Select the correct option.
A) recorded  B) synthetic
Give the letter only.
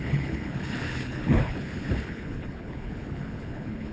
B